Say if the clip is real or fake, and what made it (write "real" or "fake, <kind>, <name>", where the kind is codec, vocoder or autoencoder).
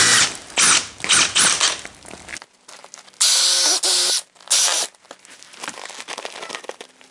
real